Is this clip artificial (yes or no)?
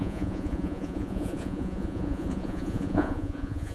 yes